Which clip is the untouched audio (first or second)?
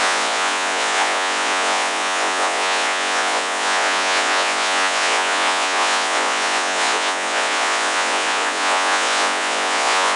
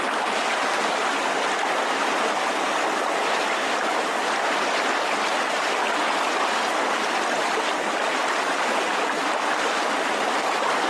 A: second